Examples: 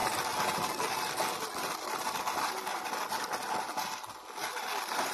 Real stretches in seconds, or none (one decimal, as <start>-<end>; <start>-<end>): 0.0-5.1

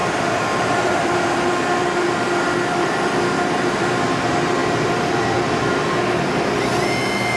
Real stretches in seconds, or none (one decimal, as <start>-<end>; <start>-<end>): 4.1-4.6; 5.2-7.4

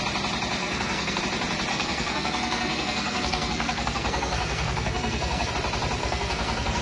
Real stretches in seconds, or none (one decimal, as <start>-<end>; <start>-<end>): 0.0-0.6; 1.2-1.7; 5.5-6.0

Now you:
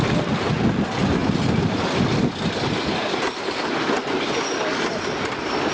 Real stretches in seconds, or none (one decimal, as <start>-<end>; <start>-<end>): 0.0-1.2; 2.2-4.9

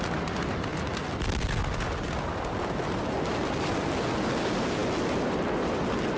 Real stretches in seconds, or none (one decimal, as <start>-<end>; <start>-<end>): 0.0-6.2